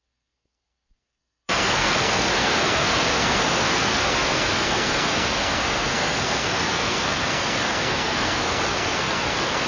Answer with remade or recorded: remade